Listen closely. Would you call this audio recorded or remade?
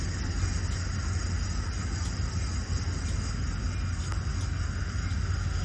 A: recorded